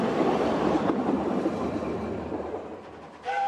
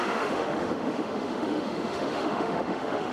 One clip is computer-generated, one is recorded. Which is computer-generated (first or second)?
second